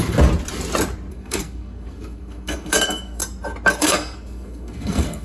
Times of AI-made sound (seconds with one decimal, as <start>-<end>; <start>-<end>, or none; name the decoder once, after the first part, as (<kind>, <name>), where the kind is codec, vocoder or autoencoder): 1.1-3.2 (codec, SNAC); 3.8-5.2